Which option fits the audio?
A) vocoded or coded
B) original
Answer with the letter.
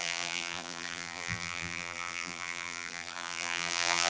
A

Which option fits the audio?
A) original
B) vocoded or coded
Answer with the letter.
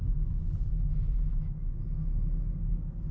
A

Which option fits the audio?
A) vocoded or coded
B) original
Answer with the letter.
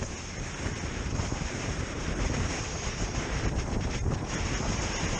A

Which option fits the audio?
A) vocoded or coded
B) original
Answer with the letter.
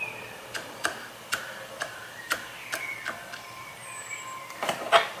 A